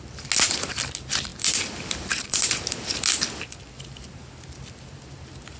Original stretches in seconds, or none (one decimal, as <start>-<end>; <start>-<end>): 0.0-5.6